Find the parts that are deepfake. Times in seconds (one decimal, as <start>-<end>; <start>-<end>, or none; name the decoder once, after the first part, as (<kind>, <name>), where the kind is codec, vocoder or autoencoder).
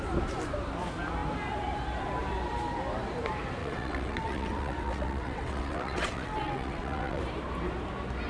3.6-7.2 (vocoder, WaveNeXt)